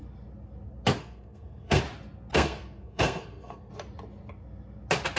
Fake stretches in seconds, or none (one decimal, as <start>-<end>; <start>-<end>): 1.0-1.8; 2.3-3.7